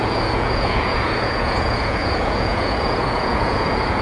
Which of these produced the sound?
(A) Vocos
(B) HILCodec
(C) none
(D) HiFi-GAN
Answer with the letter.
A